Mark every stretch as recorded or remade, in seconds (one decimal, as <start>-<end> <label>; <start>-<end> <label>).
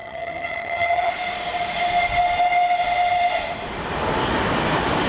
0.0-1.1 remade; 1.1-5.1 recorded